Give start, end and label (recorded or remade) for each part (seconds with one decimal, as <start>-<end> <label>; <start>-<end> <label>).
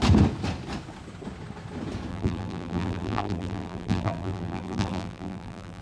0.0-2.1 recorded; 2.1-5.8 remade